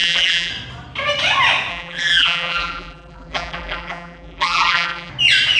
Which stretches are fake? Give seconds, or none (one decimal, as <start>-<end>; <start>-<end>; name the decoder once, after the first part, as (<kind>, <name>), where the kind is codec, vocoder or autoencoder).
0.0-0.5 (vocoder, BigVGAN v2); 1.7-5.1